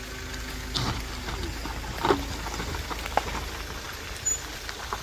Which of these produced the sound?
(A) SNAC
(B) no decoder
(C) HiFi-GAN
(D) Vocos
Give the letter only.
B